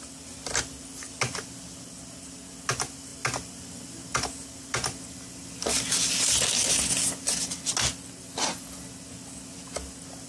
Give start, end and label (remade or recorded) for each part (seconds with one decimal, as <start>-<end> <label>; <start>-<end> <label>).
0.0-10.3 recorded